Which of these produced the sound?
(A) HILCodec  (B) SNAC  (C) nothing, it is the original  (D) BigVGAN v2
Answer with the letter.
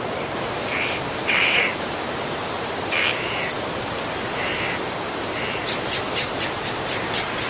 D